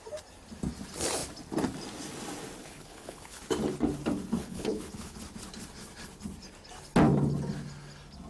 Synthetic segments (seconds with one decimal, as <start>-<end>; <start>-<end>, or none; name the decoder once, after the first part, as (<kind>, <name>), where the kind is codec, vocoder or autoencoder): 2.6-3.4 (codec, HILCodec); 4.4-5.2

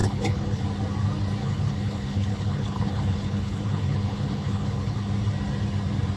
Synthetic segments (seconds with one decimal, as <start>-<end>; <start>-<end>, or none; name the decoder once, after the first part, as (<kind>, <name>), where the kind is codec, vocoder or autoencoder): 0.0-0.6 (codec, HILCodec); 1.4-5.1

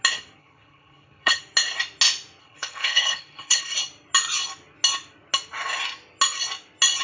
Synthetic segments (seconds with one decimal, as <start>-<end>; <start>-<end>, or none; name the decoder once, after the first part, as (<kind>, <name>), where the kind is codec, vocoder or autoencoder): 0.4-1.4 (codec, HILCodec); 2.4-3.6

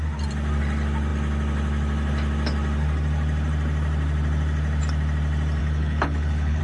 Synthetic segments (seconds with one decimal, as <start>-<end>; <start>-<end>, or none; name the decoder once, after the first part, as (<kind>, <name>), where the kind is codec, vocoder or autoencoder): 5.6-6.6 (codec, HILCodec)